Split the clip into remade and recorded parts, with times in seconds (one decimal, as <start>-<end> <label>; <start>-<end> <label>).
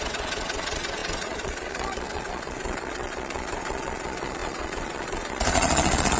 0.0-6.2 remade